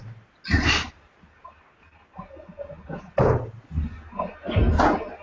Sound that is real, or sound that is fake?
real